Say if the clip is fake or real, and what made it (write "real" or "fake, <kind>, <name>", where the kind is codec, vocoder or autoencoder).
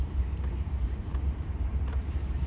fake, vocoder, BigVGAN v2